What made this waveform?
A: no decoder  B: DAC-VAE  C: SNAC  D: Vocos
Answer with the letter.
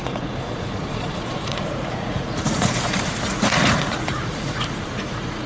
D